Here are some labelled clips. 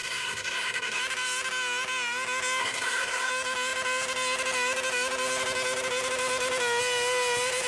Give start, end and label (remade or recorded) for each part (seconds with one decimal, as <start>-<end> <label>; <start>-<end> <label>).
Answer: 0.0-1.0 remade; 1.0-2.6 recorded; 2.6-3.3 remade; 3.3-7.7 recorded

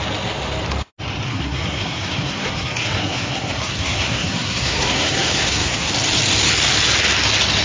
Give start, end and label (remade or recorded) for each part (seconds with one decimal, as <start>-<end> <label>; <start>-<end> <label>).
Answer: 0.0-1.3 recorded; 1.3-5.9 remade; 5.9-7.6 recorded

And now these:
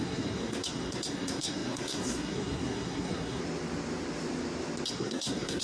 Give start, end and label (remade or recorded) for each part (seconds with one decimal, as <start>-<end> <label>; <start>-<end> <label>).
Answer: 0.0-3.4 remade; 3.4-4.9 recorded; 4.9-5.6 remade

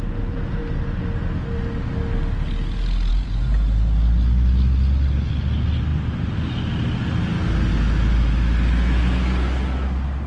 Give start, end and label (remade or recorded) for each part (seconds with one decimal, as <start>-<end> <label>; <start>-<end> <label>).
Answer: 0.0-10.3 recorded

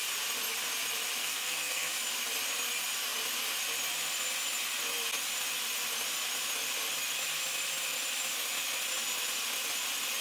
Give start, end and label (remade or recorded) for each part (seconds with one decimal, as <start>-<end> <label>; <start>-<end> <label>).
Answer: 0.0-1.2 recorded; 1.2-1.9 remade; 1.9-10.2 recorded

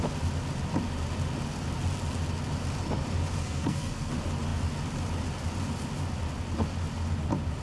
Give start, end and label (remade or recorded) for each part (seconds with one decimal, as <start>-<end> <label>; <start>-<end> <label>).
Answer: 0.0-3.4 recorded; 3.4-4.1 remade; 4.1-7.6 recorded

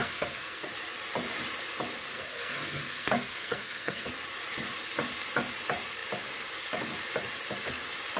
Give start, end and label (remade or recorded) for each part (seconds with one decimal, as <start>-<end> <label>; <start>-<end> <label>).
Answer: 0.0-0.7 remade; 0.7-2.1 recorded; 2.1-4.1 remade; 4.1-8.2 recorded

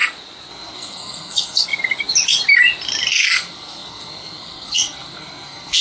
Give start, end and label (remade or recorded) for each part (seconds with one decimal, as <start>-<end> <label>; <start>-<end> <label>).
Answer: 0.0-0.5 recorded; 0.5-1.7 remade; 1.7-3.1 recorded; 3.1-5.8 remade